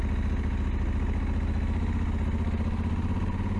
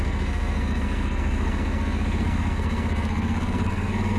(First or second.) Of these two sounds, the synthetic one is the second